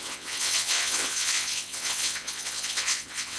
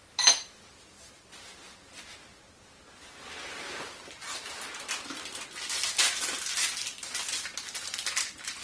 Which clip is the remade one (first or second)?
first